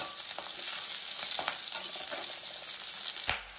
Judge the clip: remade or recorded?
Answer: recorded